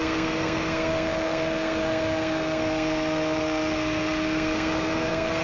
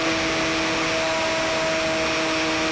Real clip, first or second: second